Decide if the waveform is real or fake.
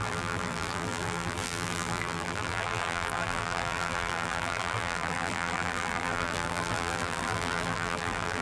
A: fake